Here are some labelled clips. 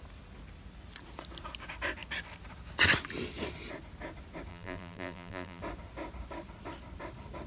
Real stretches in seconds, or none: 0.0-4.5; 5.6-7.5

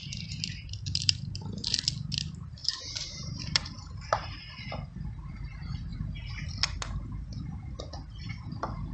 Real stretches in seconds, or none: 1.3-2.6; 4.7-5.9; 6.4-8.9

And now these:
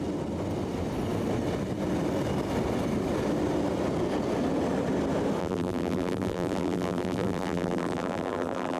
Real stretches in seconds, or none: 0.0-5.4

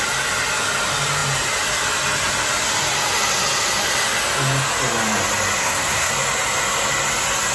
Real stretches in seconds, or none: 0.0-5.6; 6.1-7.5